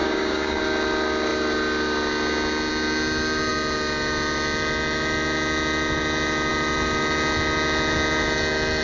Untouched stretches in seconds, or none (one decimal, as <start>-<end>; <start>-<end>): 0.6-8.8